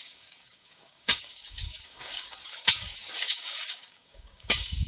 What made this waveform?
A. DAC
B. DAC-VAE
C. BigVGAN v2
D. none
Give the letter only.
A